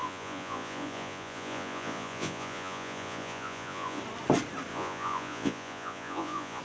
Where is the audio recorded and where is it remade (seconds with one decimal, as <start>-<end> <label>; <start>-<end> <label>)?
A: 0.0-4.0 remade; 4.0-4.7 recorded; 4.7-6.6 remade